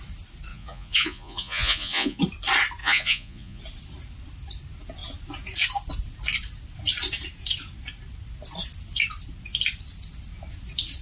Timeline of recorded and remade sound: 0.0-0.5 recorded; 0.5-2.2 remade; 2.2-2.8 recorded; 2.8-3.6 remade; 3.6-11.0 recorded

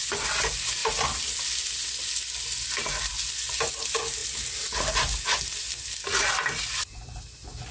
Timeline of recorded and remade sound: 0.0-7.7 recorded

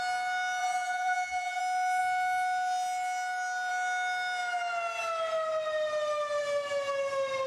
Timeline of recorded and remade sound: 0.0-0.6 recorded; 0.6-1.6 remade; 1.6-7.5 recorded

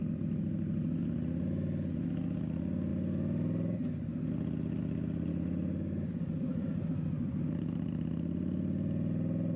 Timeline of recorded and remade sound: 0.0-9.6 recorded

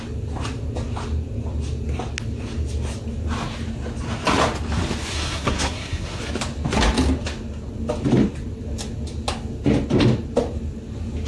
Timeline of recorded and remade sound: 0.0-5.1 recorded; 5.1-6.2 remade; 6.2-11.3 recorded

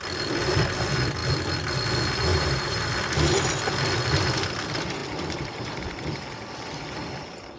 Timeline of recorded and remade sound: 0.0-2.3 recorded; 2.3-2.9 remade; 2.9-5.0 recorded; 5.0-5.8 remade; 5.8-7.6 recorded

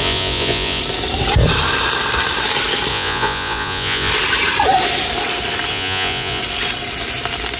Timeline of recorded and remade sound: 0.0-0.8 remade; 0.8-2.9 recorded; 2.9-4.1 remade; 4.1-5.7 recorded; 5.7-6.4 remade; 6.4-7.6 recorded

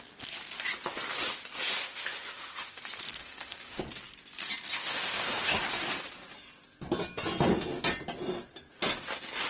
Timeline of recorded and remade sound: 0.0-1.8 recorded; 1.8-2.8 remade; 2.8-3.2 recorded; 3.2-3.8 remade; 3.8-4.7 recorded; 4.7-5.6 remade; 5.6-9.5 recorded